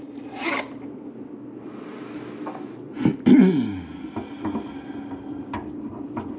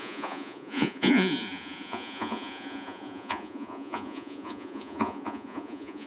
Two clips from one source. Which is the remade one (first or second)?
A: second